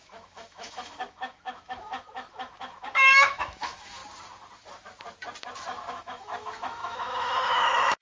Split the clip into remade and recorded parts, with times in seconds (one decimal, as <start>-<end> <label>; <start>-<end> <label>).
0.0-4.0 remade; 4.0-5.9 recorded; 5.9-8.0 remade

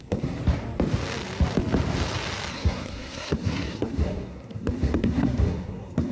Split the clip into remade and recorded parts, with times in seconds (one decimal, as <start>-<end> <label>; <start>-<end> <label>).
0.0-0.4 remade; 0.4-2.5 recorded; 2.5-6.1 remade

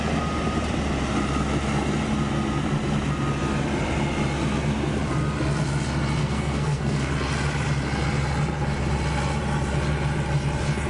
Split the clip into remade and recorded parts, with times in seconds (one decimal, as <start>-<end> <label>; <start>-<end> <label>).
0.0-6.2 recorded; 6.2-7.1 remade; 7.1-10.9 recorded

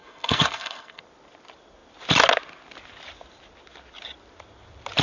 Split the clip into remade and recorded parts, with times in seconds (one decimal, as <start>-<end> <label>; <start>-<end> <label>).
0.0-1.0 remade; 1.0-5.0 recorded

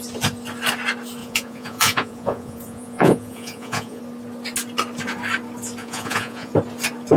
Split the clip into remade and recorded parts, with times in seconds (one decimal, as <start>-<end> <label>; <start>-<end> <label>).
0.0-1.2 recorded; 1.2-4.0 remade; 4.0-5.8 recorded; 5.8-6.5 remade; 6.5-7.2 recorded

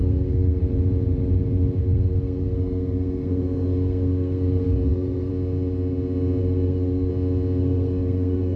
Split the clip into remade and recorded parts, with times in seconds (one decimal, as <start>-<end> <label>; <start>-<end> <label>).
0.0-0.6 remade; 0.6-1.8 recorded; 1.8-5.3 remade; 5.3-6.4 recorded; 6.4-7.1 remade; 7.1-7.6 recorded; 7.6-8.6 remade